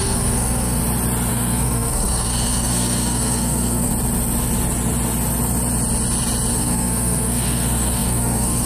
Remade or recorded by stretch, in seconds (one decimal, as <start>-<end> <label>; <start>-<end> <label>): 0.0-0.8 remade; 0.8-1.3 recorded; 1.3-3.9 remade; 3.9-6.5 recorded; 6.5-8.7 remade